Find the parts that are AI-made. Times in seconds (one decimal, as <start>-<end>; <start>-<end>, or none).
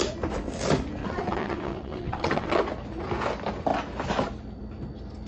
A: 1.0-2.6